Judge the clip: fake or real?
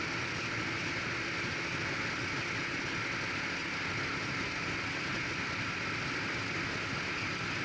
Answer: real